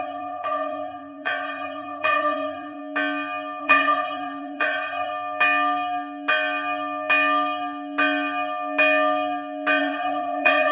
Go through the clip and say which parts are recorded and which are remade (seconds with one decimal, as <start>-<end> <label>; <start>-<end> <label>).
0.0-2.8 remade; 2.8-3.6 recorded; 3.6-5.1 remade; 5.1-9.8 recorded; 9.8-10.7 remade